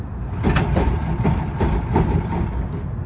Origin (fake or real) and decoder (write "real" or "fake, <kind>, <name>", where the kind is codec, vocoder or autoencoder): real